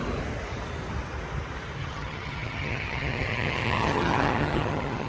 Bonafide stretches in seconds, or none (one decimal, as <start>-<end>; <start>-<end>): 0.0-1.8